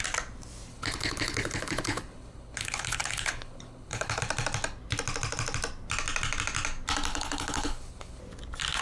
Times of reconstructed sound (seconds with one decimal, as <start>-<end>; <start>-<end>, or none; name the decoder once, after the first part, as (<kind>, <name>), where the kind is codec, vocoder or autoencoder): 0.7-4.2 (codec, HILCodec); 7.1-8.2